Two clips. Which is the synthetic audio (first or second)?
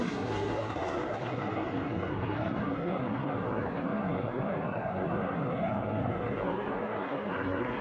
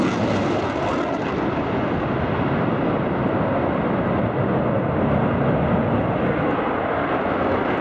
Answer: first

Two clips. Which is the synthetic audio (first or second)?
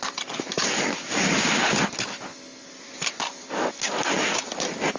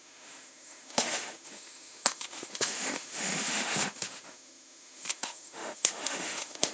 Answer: second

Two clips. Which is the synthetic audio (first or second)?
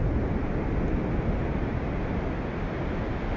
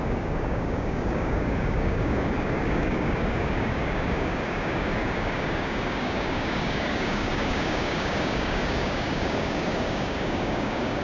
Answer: second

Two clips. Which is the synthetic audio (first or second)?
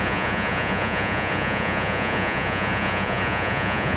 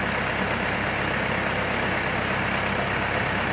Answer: first